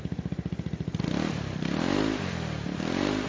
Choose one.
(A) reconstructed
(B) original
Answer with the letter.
B